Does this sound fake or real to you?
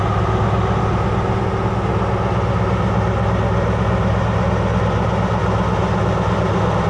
real